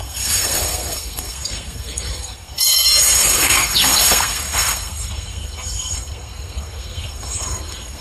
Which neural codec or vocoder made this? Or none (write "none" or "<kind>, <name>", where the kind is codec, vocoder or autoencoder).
codec, SNAC